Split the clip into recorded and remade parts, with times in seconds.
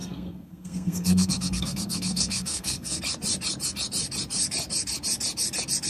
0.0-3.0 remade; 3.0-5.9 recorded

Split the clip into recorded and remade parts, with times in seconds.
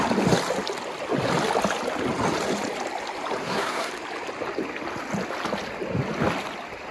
0.0-3.4 recorded; 3.4-3.9 remade; 3.9-6.9 recorded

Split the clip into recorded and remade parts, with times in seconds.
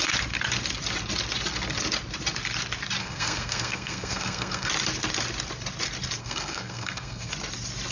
0.0-3.0 recorded; 3.0-4.7 remade; 4.7-6.2 recorded; 6.2-7.3 remade; 7.3-7.9 recorded